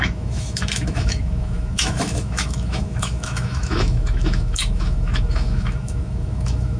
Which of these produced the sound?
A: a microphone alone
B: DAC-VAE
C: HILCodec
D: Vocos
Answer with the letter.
B